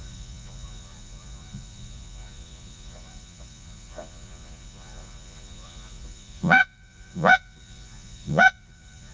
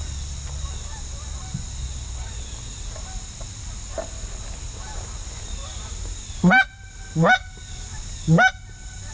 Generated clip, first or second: first